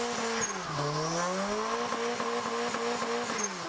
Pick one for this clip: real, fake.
real